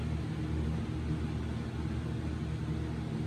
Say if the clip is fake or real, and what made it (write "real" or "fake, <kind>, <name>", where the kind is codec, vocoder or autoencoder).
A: real